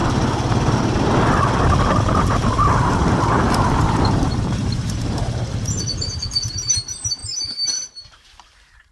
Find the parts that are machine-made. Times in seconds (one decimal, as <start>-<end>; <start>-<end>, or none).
3.7-8.9